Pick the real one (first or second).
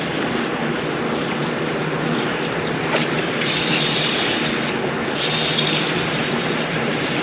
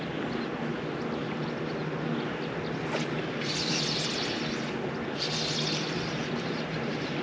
second